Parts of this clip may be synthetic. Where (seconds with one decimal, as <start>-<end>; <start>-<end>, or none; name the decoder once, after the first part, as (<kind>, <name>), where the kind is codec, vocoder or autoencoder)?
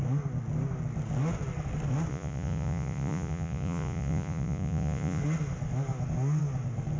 2.1-5.2 (vocoder, Vocos)